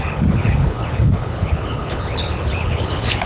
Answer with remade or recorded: remade